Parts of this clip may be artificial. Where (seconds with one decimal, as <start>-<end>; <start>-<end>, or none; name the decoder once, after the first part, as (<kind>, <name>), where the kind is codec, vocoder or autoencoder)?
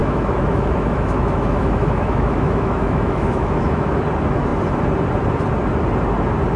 0.0-4.0 (autoencoder, DAC-VAE)